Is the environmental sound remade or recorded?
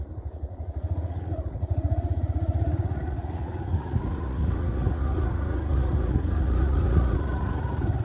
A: remade